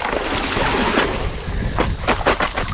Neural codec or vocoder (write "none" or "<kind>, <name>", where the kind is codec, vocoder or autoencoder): none